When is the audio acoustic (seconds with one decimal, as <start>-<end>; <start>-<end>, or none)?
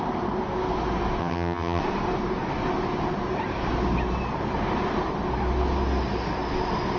0.0-1.2; 1.8-7.0